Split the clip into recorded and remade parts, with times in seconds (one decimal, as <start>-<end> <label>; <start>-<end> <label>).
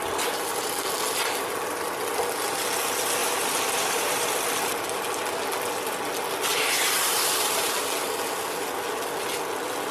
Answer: 0.0-3.2 recorded; 3.2-4.3 remade; 4.3-6.5 recorded; 6.5-7.7 remade; 7.7-9.9 recorded